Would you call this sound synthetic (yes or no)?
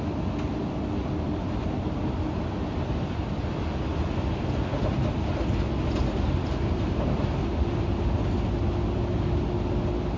no